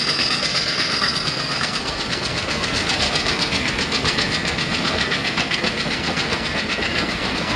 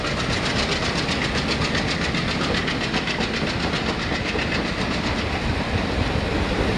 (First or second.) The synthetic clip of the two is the first